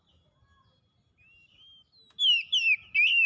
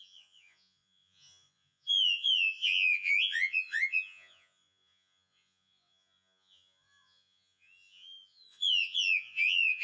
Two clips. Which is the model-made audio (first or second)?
second